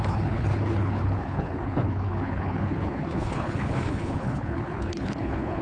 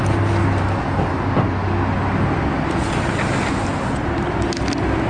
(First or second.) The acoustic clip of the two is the second